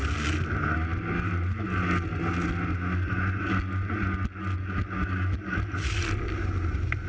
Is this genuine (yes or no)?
yes